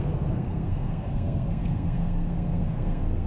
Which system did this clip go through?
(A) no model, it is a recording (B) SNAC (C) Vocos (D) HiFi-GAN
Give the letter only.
B